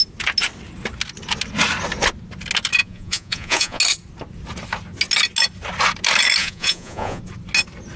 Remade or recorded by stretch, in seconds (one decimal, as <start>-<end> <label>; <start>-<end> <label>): 0.0-2.8 recorded; 2.8-3.8 remade; 3.8-6.4 recorded; 6.4-7.2 remade; 7.2-8.0 recorded